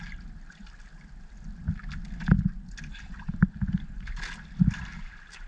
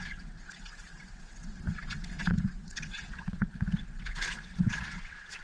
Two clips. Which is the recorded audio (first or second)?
first